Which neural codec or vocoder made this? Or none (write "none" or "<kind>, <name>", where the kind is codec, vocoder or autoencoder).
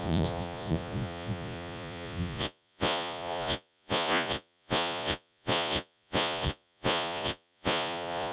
vocoder, Vocos